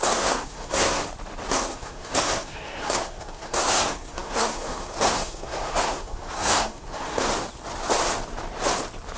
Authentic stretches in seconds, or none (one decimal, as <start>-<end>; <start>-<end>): 1.0-1.5; 7.3-9.2